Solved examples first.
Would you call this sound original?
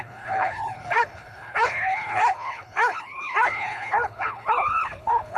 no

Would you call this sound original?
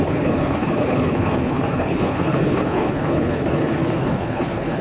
no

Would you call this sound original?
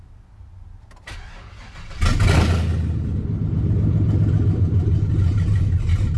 yes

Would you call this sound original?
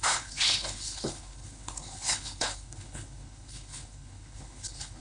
no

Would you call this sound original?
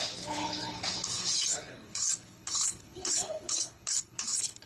no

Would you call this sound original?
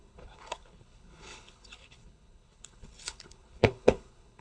no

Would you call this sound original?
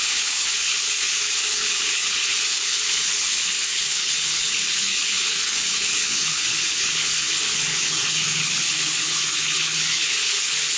no